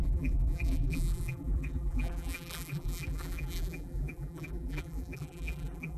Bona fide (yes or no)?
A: no